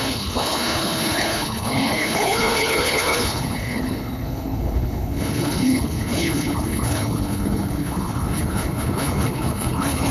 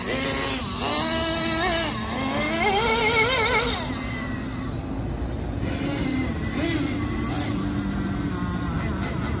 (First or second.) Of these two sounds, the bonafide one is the second